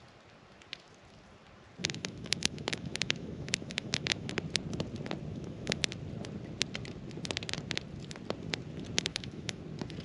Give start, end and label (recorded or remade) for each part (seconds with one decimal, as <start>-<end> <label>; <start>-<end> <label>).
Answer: 0.0-1.8 recorded; 1.8-4.3 remade; 4.3-5.3 recorded; 5.3-5.8 remade; 5.8-9.1 recorded; 9.1-9.6 remade; 9.6-10.0 recorded